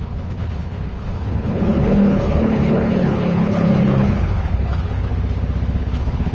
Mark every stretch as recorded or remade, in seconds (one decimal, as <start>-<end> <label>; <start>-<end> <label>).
0.0-5.1 remade; 5.1-5.8 recorded; 5.8-6.3 remade